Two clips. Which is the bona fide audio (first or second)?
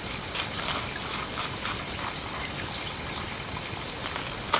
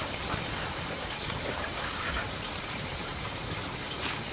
first